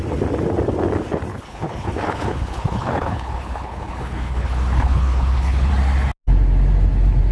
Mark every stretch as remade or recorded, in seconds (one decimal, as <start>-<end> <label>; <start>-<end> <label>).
0.0-1.3 recorded; 1.3-5.7 remade; 5.7-7.3 recorded